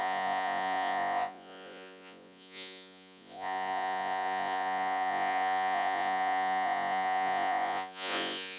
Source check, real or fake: fake